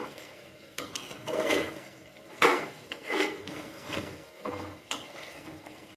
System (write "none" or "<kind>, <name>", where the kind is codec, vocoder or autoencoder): codec, SNAC